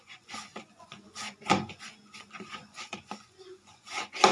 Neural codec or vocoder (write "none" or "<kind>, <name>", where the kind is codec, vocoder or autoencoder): vocoder, Vocos